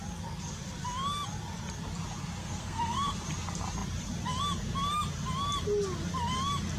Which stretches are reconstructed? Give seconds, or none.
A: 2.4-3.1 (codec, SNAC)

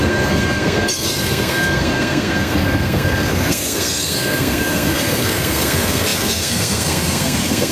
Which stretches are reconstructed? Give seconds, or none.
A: 0.0-7.7 (codec, SNAC)